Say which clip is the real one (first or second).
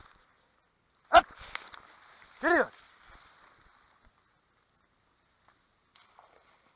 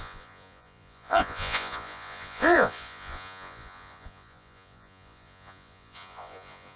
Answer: first